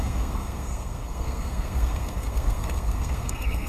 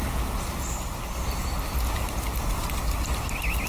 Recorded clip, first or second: second